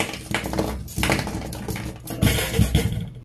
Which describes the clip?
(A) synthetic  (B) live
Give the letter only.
A